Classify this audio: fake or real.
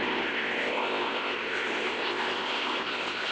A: fake